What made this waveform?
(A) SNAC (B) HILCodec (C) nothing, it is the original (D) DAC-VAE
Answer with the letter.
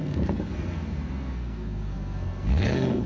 A